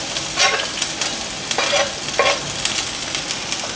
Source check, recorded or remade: recorded